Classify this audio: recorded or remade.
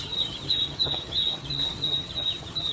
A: remade